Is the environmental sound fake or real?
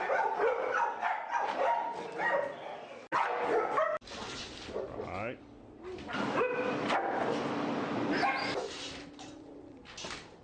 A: real